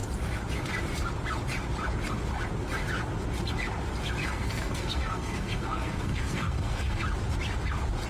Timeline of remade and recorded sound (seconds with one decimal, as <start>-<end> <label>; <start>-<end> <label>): 0.0-4.2 recorded; 4.2-7.0 remade; 7.0-8.1 recorded